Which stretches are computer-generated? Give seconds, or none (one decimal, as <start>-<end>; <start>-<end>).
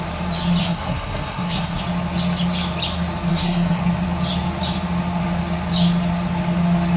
0.6-1.8; 3.3-3.8